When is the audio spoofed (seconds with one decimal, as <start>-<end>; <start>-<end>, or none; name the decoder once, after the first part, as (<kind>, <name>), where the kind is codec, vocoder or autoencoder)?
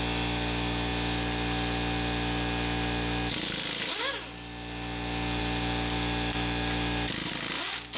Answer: none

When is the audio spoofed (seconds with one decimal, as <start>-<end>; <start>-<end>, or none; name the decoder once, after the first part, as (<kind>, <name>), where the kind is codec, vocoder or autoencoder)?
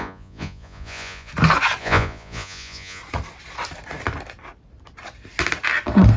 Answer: 0.0-1.3 (vocoder, Vocos); 1.8-3.0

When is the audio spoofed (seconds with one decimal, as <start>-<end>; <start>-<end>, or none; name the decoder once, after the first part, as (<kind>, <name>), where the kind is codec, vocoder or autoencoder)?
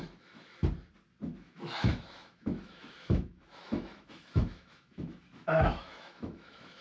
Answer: 0.0-0.6 (autoencoder, DAC-VAE); 1.2-6.8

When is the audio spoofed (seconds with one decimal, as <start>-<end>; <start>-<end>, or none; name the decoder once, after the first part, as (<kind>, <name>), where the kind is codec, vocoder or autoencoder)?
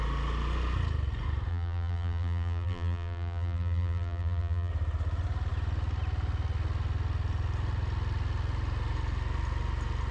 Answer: 1.5-4.7 (vocoder, BigVGAN v2)